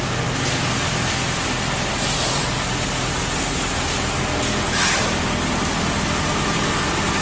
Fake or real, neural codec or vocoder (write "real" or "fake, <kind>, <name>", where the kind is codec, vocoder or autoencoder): real